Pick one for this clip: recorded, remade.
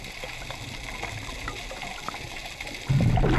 recorded